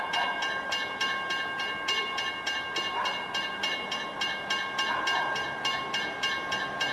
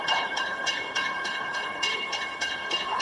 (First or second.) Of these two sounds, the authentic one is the first